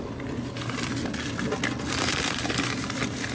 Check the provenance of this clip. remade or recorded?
recorded